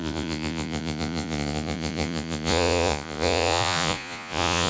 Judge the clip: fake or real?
fake